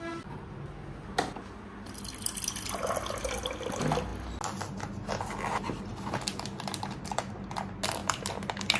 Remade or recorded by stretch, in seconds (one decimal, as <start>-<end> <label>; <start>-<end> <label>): 0.0-8.8 recorded